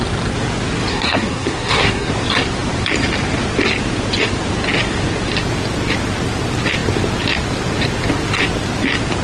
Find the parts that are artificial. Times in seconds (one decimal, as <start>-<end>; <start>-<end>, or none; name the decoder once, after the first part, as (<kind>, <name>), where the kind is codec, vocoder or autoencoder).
0.9-2.1 (codec, SNAC)

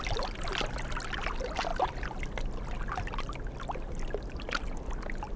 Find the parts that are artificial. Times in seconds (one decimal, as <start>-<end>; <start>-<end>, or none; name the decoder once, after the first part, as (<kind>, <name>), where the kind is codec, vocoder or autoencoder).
none

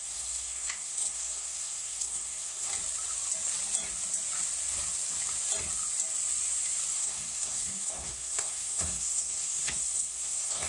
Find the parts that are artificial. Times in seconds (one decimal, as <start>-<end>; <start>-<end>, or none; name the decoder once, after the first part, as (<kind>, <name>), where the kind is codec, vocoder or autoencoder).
0.0-2.7 (codec, SNAC); 6.9-10.7

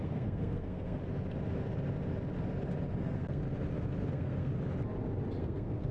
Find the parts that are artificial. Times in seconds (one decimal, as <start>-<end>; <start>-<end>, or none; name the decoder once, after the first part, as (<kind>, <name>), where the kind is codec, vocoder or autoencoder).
0.0-1.0 (codec, SNAC); 3.0-3.4; 4.1-4.5; 5.4-5.9

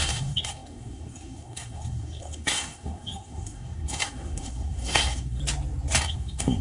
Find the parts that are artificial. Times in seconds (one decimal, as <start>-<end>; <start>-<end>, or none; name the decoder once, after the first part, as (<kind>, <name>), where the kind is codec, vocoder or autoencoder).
0.0-5.4 (codec, SNAC); 6.0-6.6

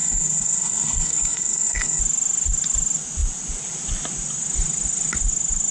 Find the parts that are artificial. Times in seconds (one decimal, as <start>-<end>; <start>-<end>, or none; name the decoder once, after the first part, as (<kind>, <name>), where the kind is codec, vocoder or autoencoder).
0.0-2.0 (codec, SNAC)